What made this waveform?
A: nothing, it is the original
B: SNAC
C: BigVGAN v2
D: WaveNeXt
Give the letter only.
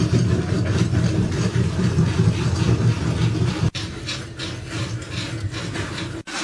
A